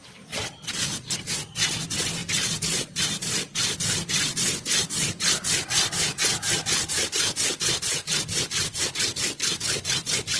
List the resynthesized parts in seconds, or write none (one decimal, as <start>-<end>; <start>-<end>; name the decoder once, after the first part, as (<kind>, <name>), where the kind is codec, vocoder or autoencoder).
none